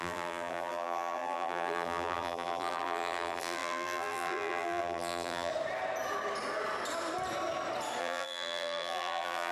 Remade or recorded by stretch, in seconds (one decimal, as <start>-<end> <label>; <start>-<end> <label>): 0.0-5.5 remade; 5.5-8.0 recorded; 8.0-9.5 remade